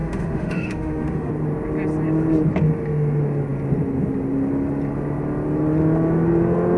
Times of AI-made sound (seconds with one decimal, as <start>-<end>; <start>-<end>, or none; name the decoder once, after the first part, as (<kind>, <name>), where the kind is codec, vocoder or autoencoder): 0.0-1.3 (autoencoder, DAC-VAE)